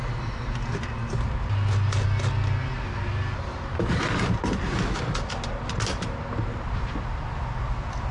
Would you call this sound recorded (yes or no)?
yes